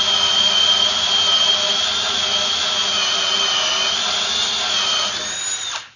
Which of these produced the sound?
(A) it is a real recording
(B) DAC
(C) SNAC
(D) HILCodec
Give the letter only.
A